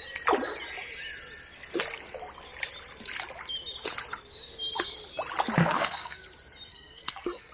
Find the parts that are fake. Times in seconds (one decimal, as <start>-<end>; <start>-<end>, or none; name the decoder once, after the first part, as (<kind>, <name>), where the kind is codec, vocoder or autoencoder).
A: 5.6-6.2 (codec, SNAC); 6.7-7.5